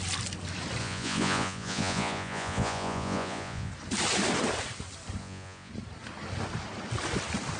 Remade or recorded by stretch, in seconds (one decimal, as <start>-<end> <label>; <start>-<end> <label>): 0.0-0.8 recorded; 0.8-3.7 remade; 3.7-5.2 recorded; 5.2-5.7 remade; 5.7-7.6 recorded